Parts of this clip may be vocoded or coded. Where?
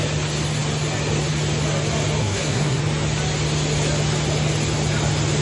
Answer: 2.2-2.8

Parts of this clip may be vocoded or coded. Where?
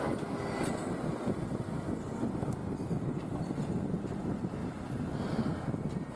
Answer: none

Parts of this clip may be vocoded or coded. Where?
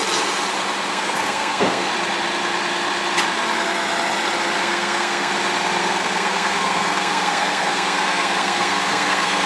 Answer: 0.9-1.9; 4.6-5.3; 5.8-9.5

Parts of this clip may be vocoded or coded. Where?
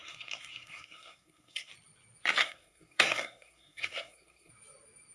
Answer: 0.0-1.7; 2.4-4.5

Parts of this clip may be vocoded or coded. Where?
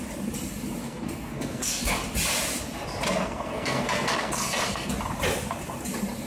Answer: 0.8-1.8; 3.1-4.9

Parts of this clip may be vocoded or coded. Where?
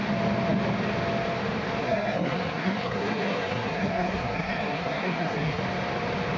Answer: 1.8-5.6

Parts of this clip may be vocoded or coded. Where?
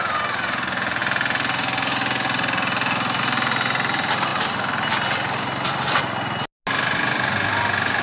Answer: none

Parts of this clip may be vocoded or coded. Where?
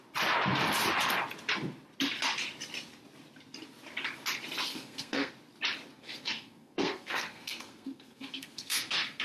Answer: 4.7-5.3; 5.9-9.2